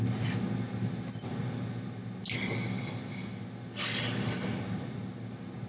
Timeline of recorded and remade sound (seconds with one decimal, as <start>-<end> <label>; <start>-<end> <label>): 0.0-4.5 recorded; 4.5-5.0 remade; 5.0-5.7 recorded